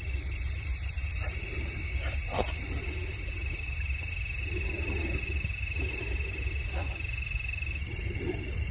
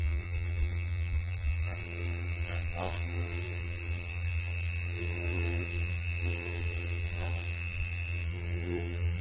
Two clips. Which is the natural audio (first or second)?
first